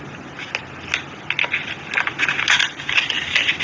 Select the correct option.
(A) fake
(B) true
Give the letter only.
B